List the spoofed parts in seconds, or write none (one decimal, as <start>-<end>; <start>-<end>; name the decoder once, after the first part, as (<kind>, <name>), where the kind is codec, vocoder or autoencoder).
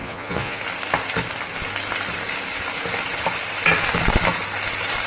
0.0-0.6 (vocoder, Vocos)